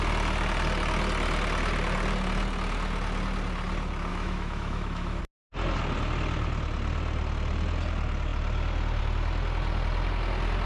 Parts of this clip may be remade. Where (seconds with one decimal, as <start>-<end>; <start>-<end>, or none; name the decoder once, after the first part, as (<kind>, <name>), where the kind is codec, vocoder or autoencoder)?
4.1-5.2 (autoencoder, DAC-VAE)

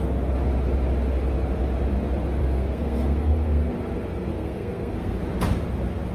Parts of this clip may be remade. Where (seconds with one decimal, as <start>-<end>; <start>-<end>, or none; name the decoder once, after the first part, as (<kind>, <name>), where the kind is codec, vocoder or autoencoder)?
2.4-3.7 (codec, SNAC); 4.3-5.2